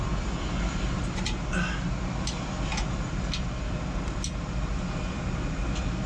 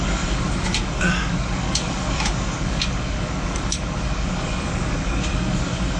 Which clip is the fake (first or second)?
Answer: second